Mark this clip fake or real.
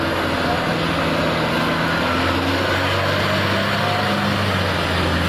real